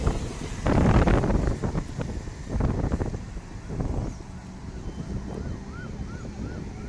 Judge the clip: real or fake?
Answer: real